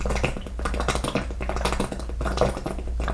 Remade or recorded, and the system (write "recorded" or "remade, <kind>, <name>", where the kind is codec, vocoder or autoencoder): recorded